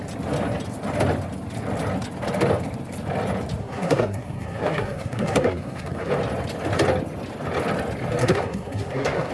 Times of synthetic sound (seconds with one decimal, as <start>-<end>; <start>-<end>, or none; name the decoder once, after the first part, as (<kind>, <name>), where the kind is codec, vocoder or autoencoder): 3.6-6.1 (codec, SNAC); 8.2-9.3